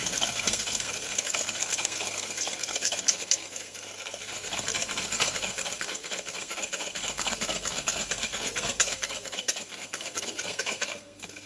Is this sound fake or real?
fake